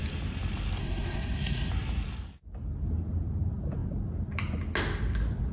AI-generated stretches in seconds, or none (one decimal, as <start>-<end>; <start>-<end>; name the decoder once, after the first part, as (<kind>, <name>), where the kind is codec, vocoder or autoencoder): 0.8-1.7 (codec, SNAC)